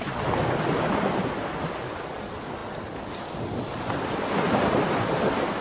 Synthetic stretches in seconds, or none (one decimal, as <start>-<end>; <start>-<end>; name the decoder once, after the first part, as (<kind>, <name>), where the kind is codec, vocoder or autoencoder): none